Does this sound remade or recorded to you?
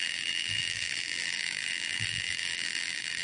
remade